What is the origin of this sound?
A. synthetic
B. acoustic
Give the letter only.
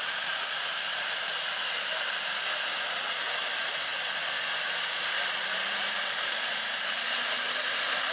B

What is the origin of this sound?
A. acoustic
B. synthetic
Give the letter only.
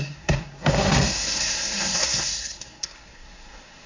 B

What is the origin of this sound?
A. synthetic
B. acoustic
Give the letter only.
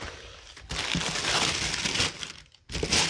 B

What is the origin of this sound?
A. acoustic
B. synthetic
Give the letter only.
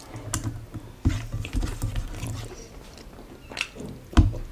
A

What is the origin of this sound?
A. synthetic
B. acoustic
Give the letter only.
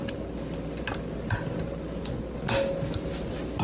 B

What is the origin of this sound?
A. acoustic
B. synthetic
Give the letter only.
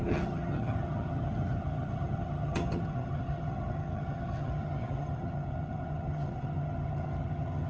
B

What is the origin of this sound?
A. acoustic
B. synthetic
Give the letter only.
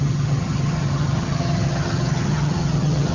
B